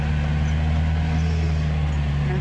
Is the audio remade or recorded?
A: recorded